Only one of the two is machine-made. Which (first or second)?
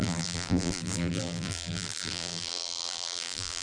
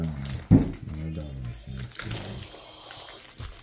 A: first